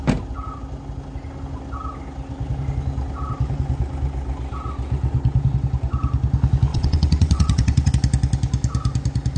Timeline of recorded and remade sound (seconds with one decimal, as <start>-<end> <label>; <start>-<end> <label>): 0.0-6.7 recorded; 6.7-7.9 remade; 7.9-9.4 recorded